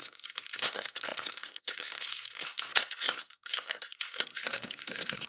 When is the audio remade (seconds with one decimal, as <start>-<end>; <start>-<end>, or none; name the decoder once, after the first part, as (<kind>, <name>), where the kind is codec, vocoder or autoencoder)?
0.0-5.3 (codec, SNAC)